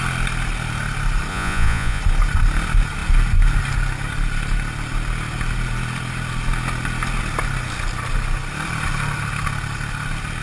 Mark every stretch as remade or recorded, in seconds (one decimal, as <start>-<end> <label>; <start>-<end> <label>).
0.0-1.3 recorded; 1.3-2.0 remade; 2.0-10.4 recorded